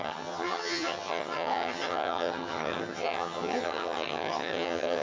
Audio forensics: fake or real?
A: fake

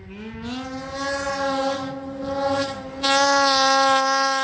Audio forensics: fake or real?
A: real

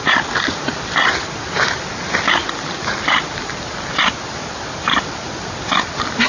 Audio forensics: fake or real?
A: real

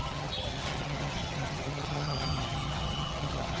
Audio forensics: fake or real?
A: fake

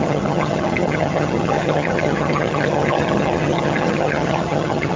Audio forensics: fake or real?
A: fake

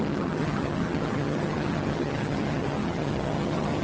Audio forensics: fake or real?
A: fake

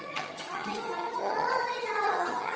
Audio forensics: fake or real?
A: fake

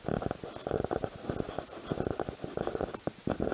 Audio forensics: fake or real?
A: real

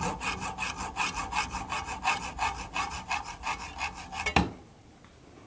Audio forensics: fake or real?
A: real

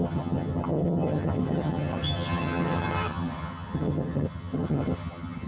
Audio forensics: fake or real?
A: fake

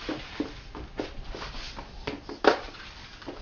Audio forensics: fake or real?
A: real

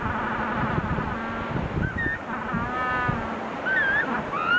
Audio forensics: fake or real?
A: real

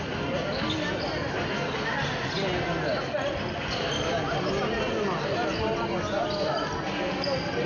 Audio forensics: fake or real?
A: real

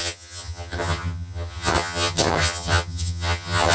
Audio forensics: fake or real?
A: fake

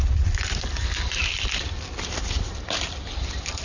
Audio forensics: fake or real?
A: real